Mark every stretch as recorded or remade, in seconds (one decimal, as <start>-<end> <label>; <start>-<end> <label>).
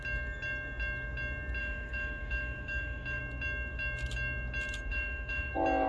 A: 0.0-1.6 recorded; 1.6-3.2 remade; 3.2-4.9 recorded; 4.9-5.5 remade; 5.5-5.9 recorded